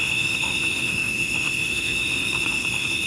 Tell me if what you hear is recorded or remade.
remade